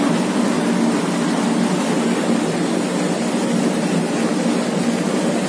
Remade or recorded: recorded